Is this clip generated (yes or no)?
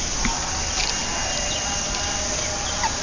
no